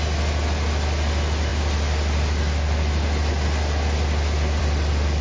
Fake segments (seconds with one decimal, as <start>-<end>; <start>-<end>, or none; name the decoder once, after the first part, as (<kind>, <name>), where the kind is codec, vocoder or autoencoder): none